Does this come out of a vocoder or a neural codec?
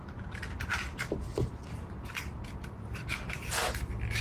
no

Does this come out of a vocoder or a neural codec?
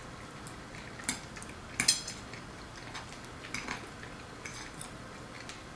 no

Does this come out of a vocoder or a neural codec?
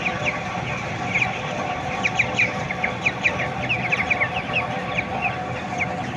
no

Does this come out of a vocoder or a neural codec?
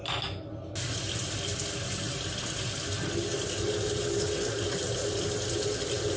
no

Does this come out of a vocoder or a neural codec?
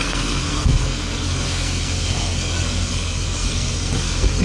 yes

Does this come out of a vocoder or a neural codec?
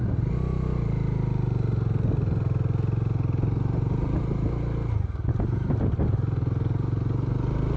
no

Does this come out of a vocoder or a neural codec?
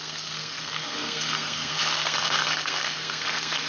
yes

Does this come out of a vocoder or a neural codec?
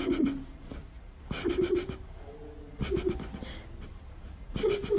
no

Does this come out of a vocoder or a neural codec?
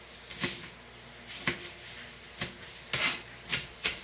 no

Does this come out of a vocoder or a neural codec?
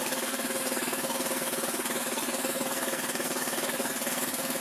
yes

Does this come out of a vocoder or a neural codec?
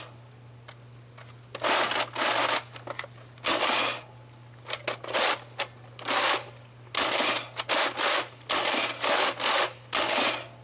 no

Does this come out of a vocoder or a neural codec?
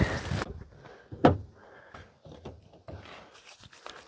no